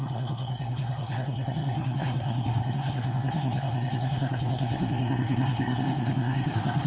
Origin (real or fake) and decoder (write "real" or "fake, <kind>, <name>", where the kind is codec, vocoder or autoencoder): fake, codec, SNAC